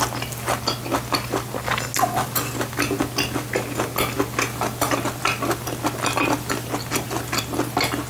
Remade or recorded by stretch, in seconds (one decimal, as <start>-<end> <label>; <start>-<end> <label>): 0.0-8.1 recorded